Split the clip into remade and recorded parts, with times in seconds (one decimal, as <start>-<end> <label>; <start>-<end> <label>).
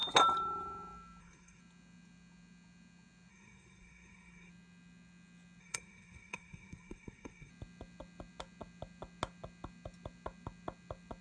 0.0-1.2 recorded; 1.2-1.6 remade; 1.6-3.3 recorded; 3.3-4.5 remade; 4.5-5.6 recorded; 5.6-7.5 remade; 7.5-11.2 recorded